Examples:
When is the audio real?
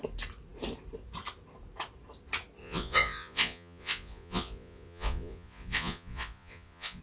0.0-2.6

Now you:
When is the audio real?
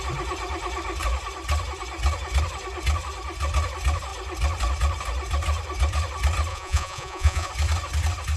0.0-6.5; 7.5-8.4